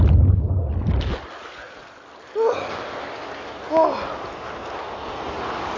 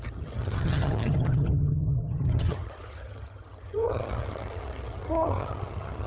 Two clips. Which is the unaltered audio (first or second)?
first